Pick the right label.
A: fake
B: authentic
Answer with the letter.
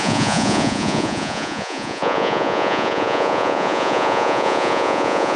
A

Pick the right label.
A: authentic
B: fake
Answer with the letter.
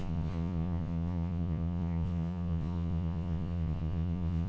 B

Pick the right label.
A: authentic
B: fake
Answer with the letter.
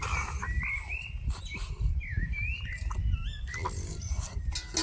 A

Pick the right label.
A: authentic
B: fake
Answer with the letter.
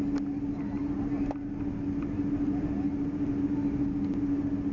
A